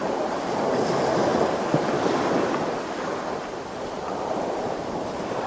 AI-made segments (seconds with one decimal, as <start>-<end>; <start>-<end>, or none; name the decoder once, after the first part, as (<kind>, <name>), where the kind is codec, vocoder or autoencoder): none